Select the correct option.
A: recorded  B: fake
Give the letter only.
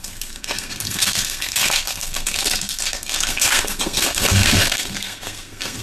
B